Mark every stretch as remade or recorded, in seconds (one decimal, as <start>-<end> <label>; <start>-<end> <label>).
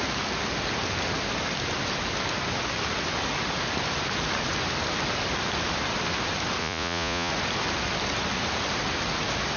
0.0-6.6 recorded; 6.6-7.3 remade; 7.3-9.6 recorded